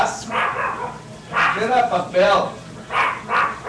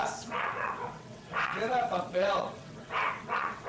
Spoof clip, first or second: second